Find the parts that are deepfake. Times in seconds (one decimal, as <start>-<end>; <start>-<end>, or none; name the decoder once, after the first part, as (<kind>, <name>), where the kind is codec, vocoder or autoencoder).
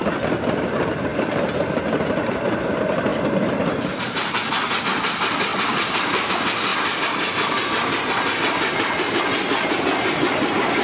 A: 1.1-1.8 (vocoder, BigVGAN v2); 6.7-8.1